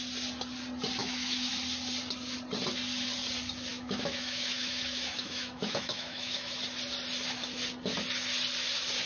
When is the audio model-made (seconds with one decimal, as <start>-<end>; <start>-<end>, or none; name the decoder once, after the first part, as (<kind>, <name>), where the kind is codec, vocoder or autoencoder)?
1.0-1.5 (autoencoder, DAC-VAE); 3.7-6.6